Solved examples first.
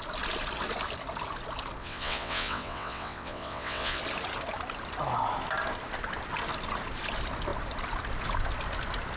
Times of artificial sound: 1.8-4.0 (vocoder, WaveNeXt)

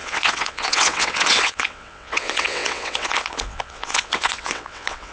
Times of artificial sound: 0.0-5.1 (vocoder, WaveNeXt)